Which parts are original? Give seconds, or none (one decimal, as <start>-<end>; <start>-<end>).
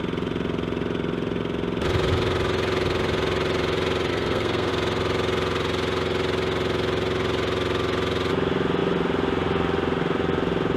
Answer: 0.0-4.1; 4.7-10.8